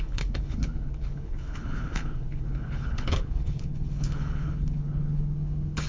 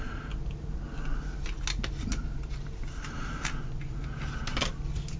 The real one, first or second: second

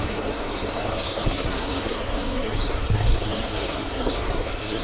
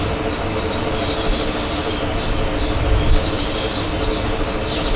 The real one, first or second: second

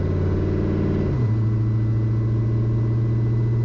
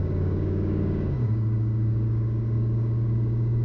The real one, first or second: first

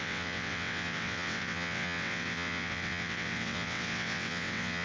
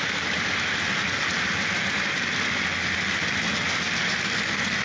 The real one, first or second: second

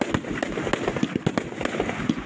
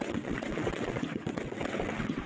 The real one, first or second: first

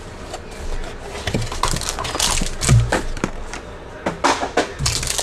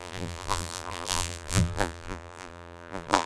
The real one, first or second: first